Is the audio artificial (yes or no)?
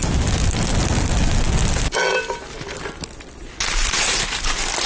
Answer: no